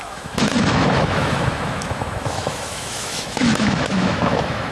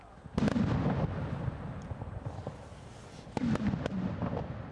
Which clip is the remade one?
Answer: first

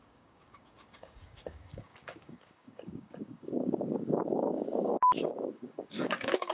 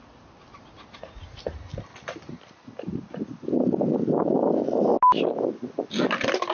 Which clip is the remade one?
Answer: first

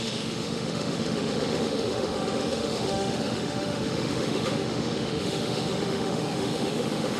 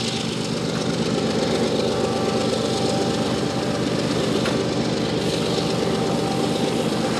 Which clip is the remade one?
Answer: first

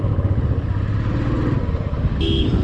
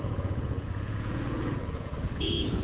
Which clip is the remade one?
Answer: second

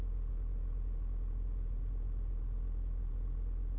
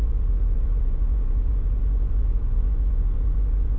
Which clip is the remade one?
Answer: second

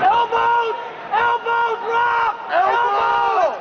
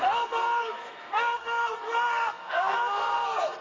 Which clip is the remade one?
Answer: second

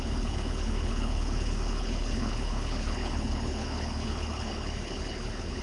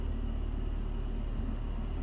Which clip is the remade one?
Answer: first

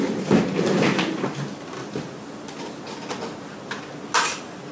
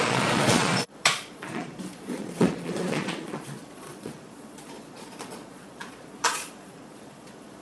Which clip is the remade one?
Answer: second